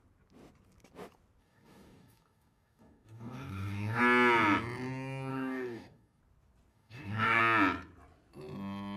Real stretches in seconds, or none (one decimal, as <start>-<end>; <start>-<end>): 0.0-1.4; 4.0-5.3; 6.2-6.7; 7.4-9.0